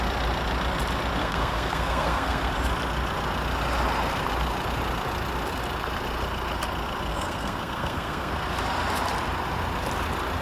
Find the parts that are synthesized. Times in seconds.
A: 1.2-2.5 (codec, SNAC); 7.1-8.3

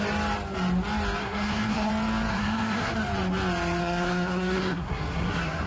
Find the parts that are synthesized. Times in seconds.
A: 1.2-1.9 (codec, SNAC); 2.3-2.9; 3.8-5.7

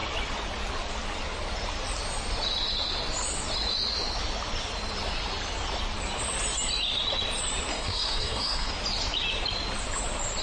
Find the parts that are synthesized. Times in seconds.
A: 7.7-8.7 (codec, SNAC)

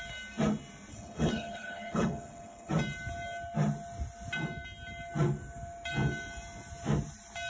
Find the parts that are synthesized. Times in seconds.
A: 0.9-2.7 (codec, HILCodec)